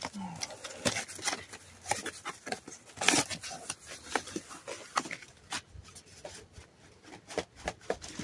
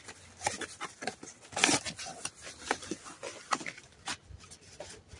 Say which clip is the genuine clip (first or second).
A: first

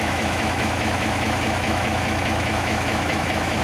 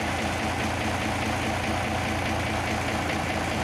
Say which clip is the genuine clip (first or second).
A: second